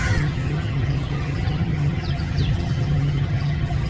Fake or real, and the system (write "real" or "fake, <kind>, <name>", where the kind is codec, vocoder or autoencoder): fake, vocoder, HiFi-GAN